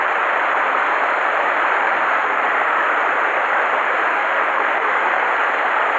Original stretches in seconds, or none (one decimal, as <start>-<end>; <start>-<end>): 0.0-1.8; 2.9-4.1; 5.3-6.0